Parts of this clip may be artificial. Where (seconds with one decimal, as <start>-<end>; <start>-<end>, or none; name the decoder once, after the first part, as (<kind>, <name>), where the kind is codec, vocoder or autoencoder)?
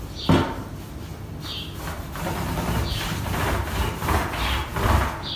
none